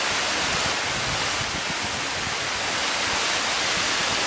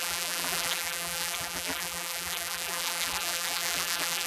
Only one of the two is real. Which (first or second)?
first